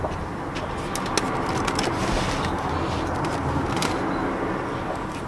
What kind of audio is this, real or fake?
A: real